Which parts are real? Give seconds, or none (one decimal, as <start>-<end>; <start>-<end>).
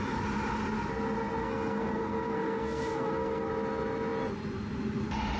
0.0-1.4; 3.5-5.4